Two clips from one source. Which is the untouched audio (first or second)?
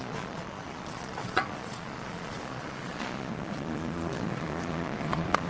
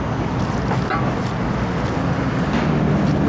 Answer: second